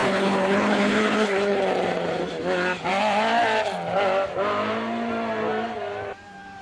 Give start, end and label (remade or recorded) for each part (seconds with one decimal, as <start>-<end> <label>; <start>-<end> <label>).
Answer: 0.0-1.6 remade; 1.6-6.6 recorded